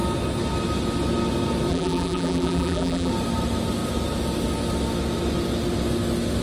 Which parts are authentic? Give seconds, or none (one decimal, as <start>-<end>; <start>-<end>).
0.0-1.7; 3.1-6.4